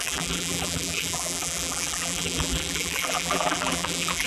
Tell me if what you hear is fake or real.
fake